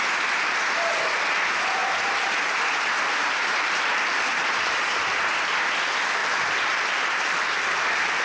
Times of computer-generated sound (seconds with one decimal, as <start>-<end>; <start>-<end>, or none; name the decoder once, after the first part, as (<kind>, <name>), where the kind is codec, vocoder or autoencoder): 6.2-6.9 (vocoder, BigVGAN v2)